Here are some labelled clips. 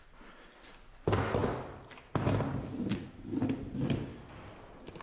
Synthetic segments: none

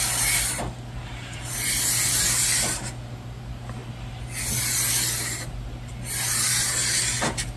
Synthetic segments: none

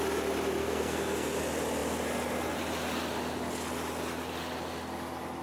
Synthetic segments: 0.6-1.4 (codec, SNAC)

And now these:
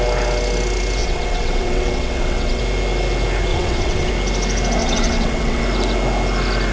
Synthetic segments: 1.0-2.6 (vocoder, WaveNeXt); 3.5-4.1; 4.8-5.6